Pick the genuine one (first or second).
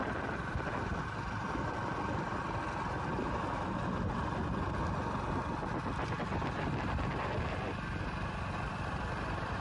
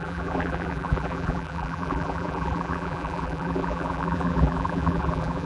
first